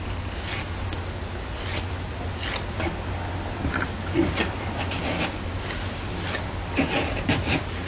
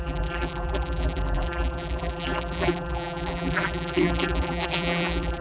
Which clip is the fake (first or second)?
second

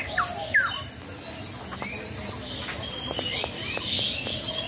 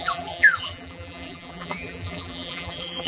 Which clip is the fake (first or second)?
second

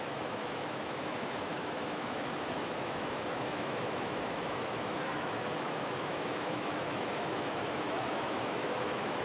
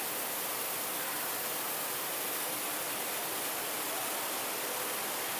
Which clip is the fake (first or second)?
first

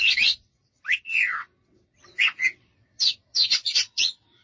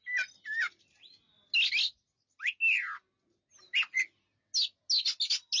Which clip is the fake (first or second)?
first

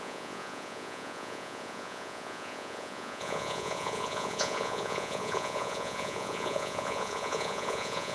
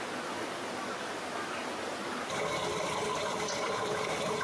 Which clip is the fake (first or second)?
first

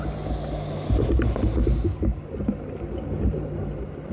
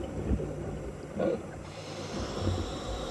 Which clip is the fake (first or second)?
second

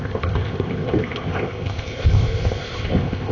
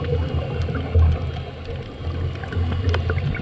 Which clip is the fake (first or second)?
first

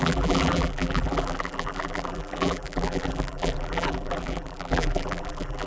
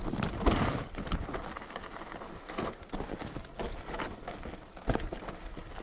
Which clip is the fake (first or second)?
first